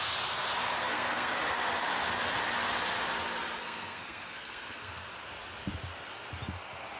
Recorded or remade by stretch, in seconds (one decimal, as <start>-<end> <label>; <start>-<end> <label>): 0.0-0.8 recorded; 0.8-1.3 remade; 1.3-3.6 recorded; 3.6-5.1 remade; 5.1-7.0 recorded